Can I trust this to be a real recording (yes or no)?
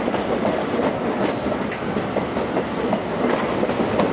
yes